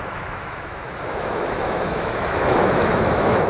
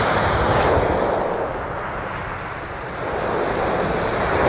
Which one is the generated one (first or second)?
first